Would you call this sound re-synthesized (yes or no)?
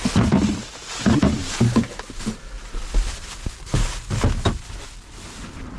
no